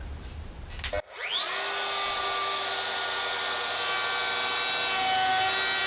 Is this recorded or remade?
recorded